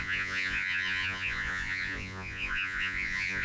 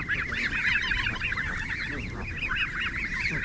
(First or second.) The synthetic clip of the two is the first